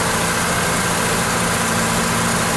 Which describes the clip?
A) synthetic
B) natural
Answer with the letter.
B